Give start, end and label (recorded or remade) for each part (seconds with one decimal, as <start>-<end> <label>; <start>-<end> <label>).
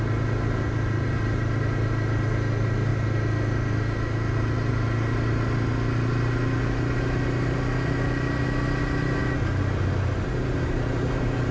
0.0-11.5 recorded